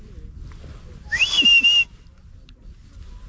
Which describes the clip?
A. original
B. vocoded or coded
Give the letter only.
A